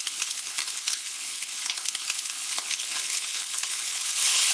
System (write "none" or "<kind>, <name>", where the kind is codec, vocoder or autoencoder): codec, HILCodec